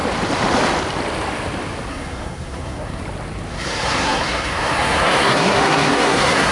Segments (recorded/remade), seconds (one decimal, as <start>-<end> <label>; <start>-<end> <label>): 0.0-1.9 recorded; 1.9-3.0 remade; 3.0-3.5 recorded; 3.5-6.5 remade